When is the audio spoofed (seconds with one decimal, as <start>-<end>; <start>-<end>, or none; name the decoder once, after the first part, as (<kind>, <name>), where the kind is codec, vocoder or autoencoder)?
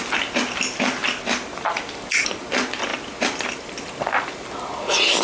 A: none